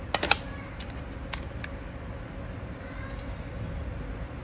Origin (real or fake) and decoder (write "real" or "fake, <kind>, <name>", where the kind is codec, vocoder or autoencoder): real